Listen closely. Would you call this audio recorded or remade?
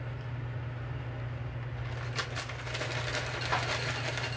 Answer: recorded